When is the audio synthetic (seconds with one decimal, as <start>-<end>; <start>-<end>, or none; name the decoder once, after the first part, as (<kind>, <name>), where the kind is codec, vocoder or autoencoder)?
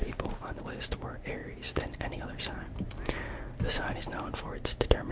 0.0-0.6 (vocoder, BigVGAN v2); 1.4-2.2